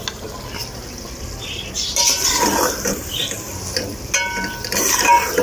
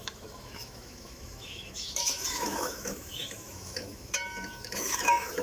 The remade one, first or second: second